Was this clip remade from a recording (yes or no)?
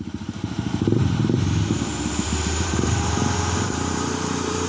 yes